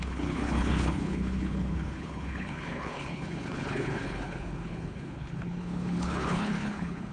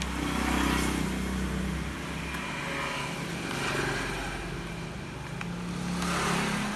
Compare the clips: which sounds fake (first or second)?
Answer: first